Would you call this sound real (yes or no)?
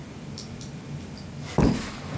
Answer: yes